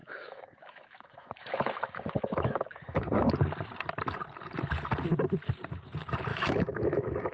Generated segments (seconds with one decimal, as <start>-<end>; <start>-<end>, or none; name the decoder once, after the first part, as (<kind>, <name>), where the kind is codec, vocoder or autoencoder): 0.0-3.0 (autoencoder, DAC-VAE); 6.3-7.3